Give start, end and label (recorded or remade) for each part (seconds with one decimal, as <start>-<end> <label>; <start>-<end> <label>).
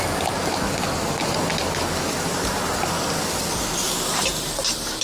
0.0-2.3 recorded; 2.3-2.9 remade; 2.9-4.2 recorded; 4.2-5.0 remade